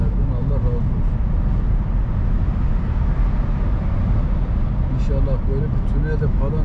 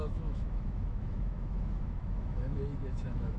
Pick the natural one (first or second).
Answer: first